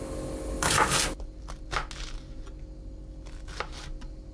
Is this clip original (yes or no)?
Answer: yes